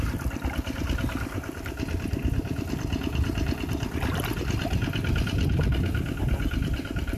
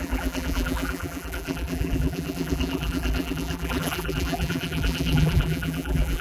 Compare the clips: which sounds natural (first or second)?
first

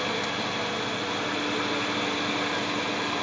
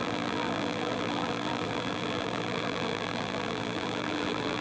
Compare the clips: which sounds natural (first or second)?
first